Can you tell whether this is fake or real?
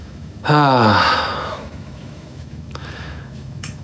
fake